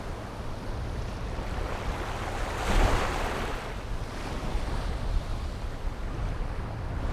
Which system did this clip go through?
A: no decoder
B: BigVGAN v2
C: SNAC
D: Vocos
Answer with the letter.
A